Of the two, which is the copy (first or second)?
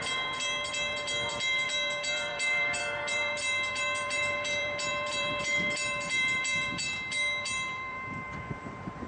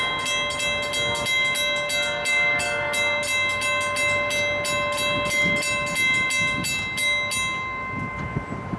first